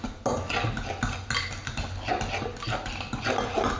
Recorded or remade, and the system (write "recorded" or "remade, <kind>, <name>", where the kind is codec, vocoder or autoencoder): recorded